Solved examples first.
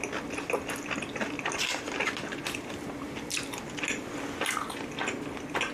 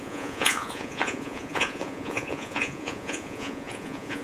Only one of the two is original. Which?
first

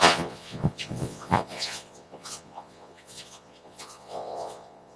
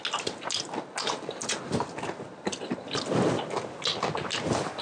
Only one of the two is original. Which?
second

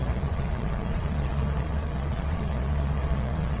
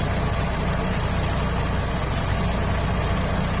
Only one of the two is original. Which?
second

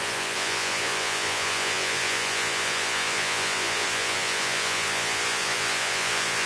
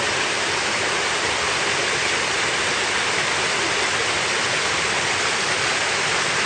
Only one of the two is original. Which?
second